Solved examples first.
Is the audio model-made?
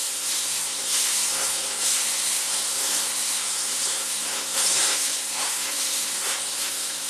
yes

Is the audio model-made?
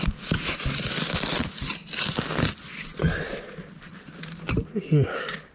no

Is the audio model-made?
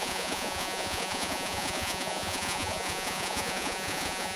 yes